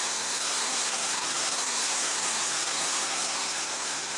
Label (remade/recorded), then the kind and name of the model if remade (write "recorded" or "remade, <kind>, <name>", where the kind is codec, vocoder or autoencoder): remade, codec, SNAC